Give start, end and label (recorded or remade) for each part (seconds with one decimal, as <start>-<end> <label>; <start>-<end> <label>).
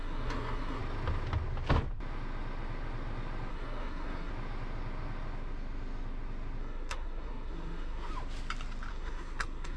0.0-0.8 remade; 0.8-3.5 recorded; 3.5-4.3 remade; 4.3-6.6 recorded; 6.6-8.1 remade; 8.1-8.9 recorded; 8.9-9.8 remade